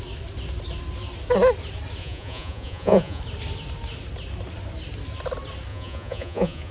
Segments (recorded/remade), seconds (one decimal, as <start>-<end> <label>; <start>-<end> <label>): 0.0-2.0 recorded; 2.0-3.2 remade; 3.2-5.7 recorded; 5.7-6.7 remade